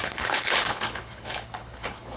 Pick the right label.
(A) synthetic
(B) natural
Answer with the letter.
A